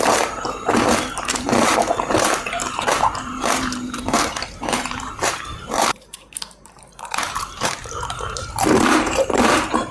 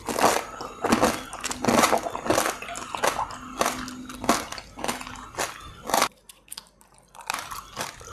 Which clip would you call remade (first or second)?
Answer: first